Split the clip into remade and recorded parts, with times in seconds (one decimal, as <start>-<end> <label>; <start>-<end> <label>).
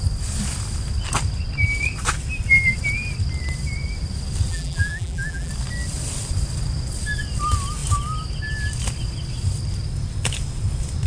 0.0-4.5 recorded; 4.5-5.5 remade; 5.5-11.1 recorded